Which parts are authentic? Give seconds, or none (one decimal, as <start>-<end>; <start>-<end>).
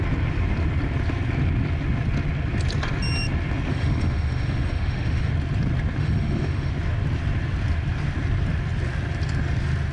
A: 0.0-3.7; 5.3-6.0; 6.7-9.9